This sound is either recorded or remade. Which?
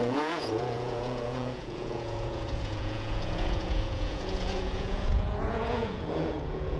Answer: remade